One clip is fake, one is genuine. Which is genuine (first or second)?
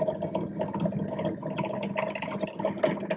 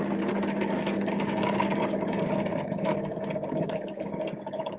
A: first